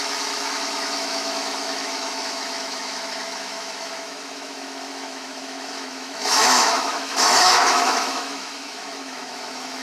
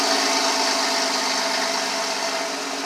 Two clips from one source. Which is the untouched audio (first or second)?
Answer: second